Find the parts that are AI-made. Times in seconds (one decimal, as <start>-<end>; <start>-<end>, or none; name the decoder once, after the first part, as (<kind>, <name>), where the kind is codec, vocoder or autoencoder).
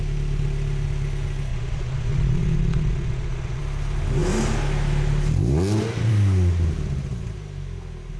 1.5-3.6 (vocoder, Vocos)